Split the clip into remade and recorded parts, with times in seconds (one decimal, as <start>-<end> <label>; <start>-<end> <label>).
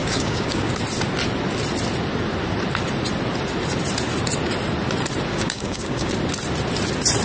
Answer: 0.0-0.7 remade; 0.7-5.3 recorded; 5.3-6.1 remade; 6.1-7.2 recorded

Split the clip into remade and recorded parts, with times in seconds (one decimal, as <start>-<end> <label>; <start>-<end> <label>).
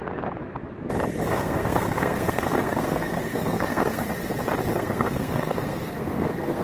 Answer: 0.0-1.3 recorded; 1.3-4.1 remade; 4.1-4.7 recorded; 4.7-6.6 remade